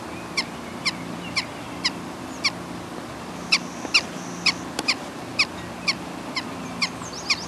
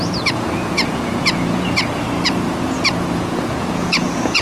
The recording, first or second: first